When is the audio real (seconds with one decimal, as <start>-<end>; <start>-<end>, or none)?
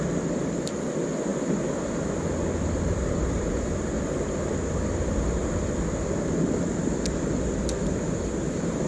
0.0-8.9